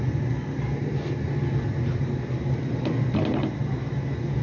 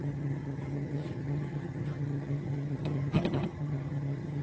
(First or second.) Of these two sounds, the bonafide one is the first